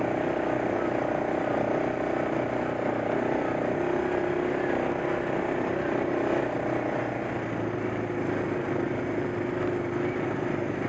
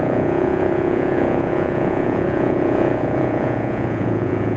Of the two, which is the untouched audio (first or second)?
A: first